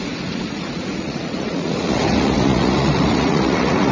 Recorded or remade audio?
remade